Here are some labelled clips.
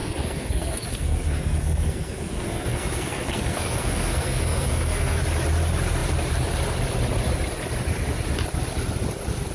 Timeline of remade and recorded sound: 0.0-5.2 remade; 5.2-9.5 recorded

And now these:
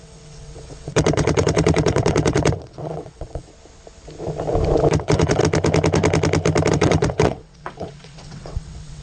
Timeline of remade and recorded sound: 0.0-3.5 remade; 3.5-4.9 recorded; 4.9-5.4 remade; 5.4-6.7 recorded; 6.7-9.0 remade

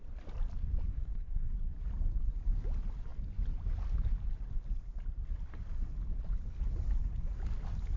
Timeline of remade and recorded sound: 0.0-0.9 recorded; 0.9-1.5 remade; 1.5-8.0 recorded

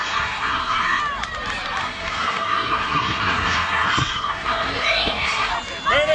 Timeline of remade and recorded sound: 0.0-1.0 remade; 1.0-1.8 recorded; 1.8-5.5 remade; 5.5-6.1 recorded

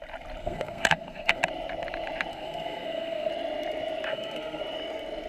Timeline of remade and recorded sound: 0.0-0.4 recorded; 0.4-1.4 remade; 1.4-2.3 recorded; 2.3-3.3 remade; 3.3-4.1 recorded; 4.1-4.6 remade; 4.6-5.3 recorded

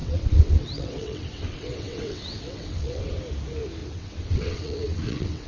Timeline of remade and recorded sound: 0.0-3.2 remade; 3.2-3.8 recorded; 3.8-5.5 remade

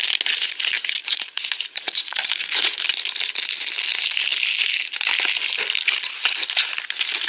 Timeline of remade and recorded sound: 0.0-1.0 recorded; 1.0-2.8 remade; 2.8-7.3 recorded